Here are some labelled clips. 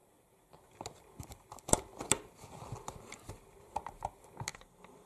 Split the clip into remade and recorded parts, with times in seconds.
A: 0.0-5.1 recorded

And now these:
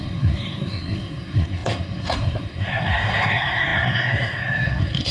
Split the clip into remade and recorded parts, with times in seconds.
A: 0.0-5.1 remade

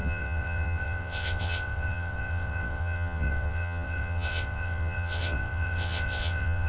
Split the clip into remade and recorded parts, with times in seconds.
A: 0.0-6.7 remade

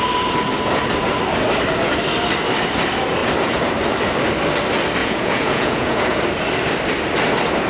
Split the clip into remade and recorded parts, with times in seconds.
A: 0.0-5.0 recorded; 5.0-6.2 remade; 6.2-7.7 recorded

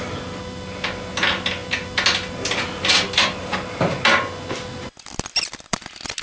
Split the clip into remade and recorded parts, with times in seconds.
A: 0.0-6.2 recorded

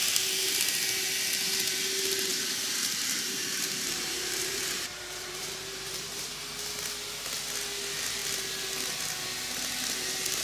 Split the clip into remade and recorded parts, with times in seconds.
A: 0.0-2.3 recorded; 2.3-6.3 remade; 6.3-10.4 recorded

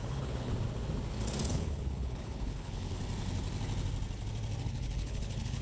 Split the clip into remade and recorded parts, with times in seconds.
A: 0.0-0.5 remade; 0.5-1.5 recorded; 1.5-3.0 remade; 3.0-4.6 recorded; 4.6-5.6 remade